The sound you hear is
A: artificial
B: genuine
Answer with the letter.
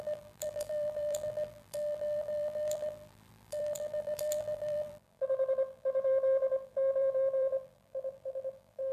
A